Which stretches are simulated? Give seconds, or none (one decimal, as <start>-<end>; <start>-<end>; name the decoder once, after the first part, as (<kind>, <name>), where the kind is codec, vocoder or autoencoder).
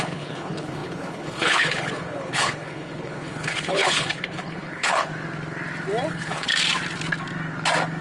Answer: 0.0-5.1 (codec, HILCodec); 6.1-6.5